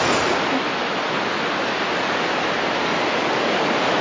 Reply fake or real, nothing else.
real